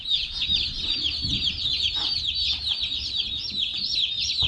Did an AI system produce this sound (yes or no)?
no